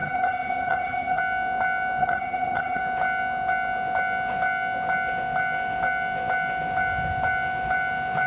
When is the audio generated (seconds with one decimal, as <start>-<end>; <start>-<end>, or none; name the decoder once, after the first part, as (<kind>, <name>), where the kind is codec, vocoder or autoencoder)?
0.0-1.2 (vocoder, HiFi-GAN); 2.0-2.8